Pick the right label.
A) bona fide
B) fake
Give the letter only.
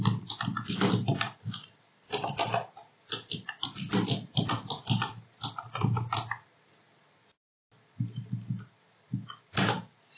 A